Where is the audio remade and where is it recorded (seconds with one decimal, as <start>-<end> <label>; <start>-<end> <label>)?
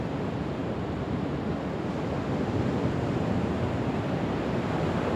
0.0-0.6 recorded; 0.6-1.8 remade; 1.8-5.2 recorded